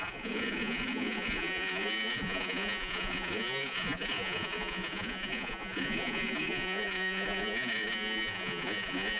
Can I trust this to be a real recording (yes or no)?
no